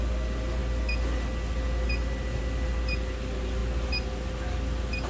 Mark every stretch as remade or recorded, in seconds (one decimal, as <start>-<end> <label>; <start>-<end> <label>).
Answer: 0.0-5.1 recorded

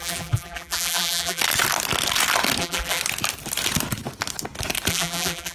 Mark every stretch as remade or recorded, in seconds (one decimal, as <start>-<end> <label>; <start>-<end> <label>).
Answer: 0.0-1.4 remade; 1.4-2.6 recorded; 2.6-3.0 remade; 3.0-4.9 recorded; 4.9-5.5 remade

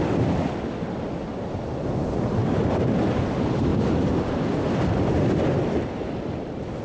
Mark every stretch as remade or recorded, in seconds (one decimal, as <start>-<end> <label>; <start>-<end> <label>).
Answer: 0.0-3.7 recorded; 3.7-6.8 remade